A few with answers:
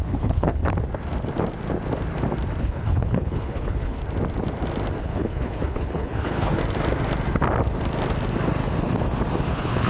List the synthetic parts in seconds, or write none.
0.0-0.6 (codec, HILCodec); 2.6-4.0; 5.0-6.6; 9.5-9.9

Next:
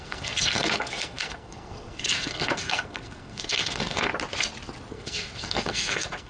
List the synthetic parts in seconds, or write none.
0.0-4.1 (codec, SNAC); 4.9-6.3

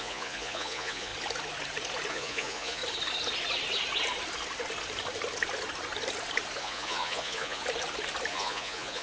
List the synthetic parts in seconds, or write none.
0.0-1.1 (vocoder, Vocos); 2.1-2.8; 6.6-7.6; 8.3-9.0

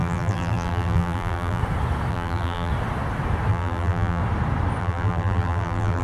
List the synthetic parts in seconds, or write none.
0.0-1.6 (vocoder, BigVGAN v2); 2.1-2.7; 3.5-4.2; 4.8-6.0

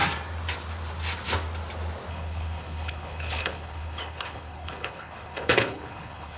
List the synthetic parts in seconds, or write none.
2.1-6.4 (codec, HILCodec)